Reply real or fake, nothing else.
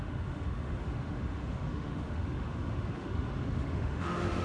fake